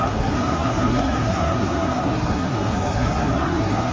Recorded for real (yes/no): no